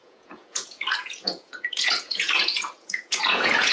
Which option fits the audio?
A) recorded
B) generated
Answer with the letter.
B